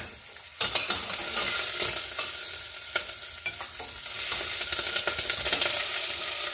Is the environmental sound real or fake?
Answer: real